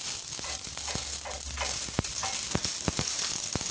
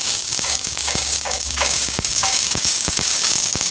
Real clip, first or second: first